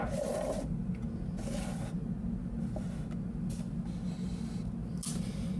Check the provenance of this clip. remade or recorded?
recorded